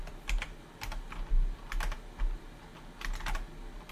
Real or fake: real